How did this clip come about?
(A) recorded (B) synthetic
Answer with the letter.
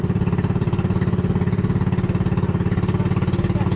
A